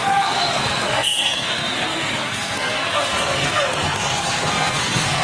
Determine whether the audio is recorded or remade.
remade